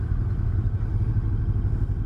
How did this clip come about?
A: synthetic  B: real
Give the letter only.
B